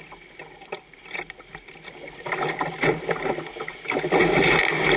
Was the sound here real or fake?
real